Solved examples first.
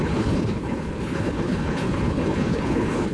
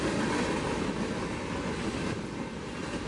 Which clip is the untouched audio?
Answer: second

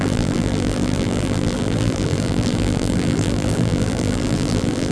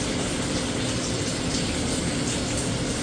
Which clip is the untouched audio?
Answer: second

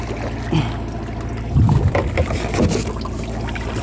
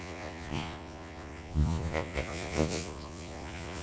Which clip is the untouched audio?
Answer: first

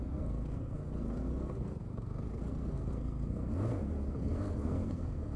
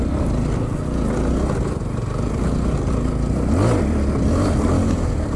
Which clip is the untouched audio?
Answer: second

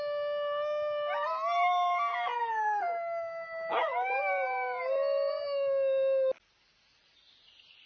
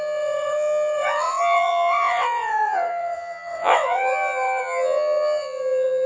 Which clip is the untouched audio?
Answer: first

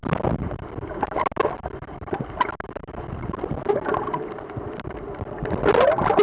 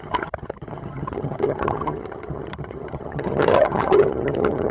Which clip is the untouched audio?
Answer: first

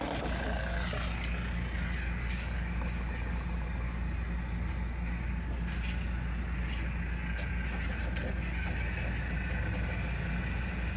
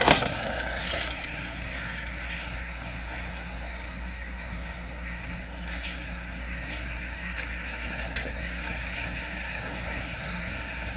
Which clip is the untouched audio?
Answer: first